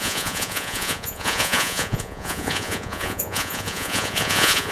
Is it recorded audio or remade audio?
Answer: remade